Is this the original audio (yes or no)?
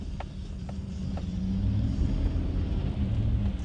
yes